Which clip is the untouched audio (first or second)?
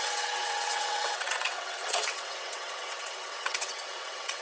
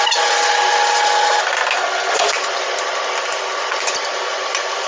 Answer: second